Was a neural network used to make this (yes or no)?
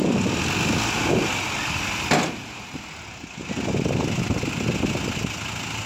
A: no